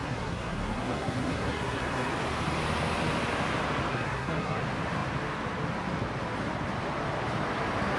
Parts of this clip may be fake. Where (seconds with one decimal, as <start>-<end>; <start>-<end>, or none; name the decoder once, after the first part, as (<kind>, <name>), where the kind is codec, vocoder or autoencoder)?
0.0-2.1 (codec, SNAC); 3.9-4.6

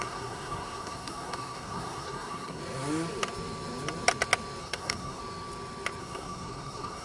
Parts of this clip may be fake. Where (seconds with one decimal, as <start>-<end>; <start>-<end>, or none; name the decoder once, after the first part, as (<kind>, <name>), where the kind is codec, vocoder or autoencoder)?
0.0-2.6 (codec, SNAC); 4.6-5.2; 6.0-7.0

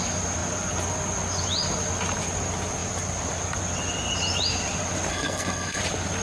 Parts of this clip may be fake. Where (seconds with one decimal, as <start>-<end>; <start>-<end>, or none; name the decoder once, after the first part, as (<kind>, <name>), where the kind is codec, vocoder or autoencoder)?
5.1-5.8 (codec, SNAC)